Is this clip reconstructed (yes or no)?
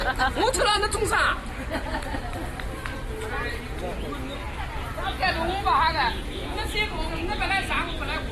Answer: no